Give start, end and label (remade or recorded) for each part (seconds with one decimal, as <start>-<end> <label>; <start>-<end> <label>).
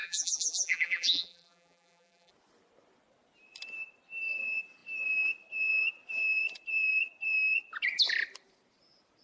0.0-2.3 remade; 2.3-9.2 recorded